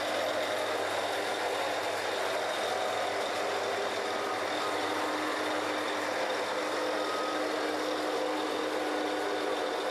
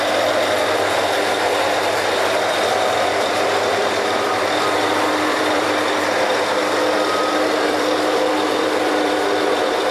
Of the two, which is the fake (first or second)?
second